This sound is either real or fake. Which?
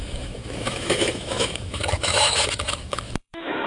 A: fake